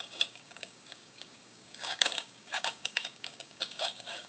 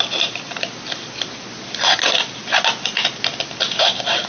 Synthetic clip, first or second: first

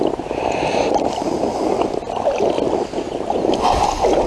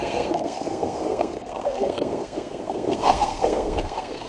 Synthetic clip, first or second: second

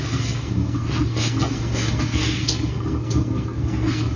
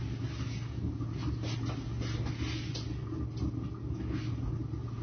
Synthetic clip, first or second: first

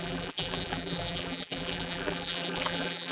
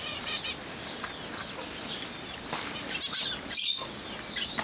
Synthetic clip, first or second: first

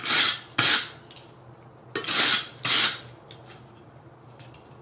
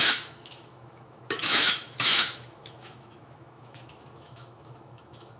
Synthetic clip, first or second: second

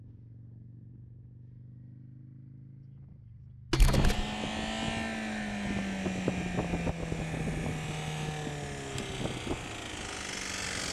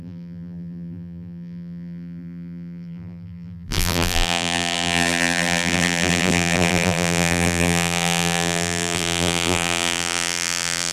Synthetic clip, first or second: second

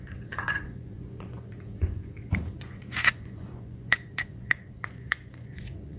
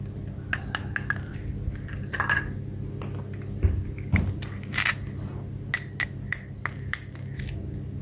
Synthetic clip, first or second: first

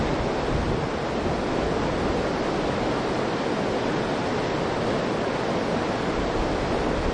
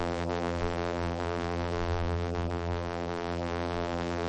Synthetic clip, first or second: second